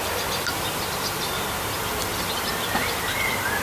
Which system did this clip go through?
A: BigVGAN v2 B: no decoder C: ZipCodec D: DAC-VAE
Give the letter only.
B